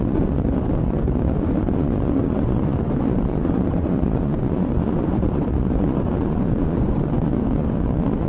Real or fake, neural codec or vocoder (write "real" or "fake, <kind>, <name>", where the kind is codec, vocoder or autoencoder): fake, vocoder, Vocos